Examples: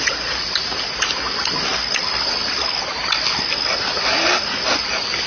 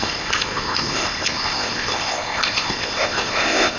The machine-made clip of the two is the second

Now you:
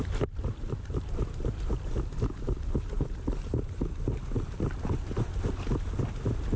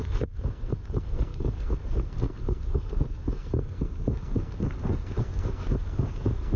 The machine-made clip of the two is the second